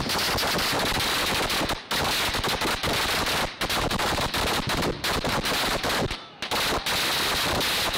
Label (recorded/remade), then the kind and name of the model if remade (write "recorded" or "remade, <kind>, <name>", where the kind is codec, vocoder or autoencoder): recorded